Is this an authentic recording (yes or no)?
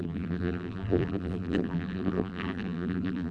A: no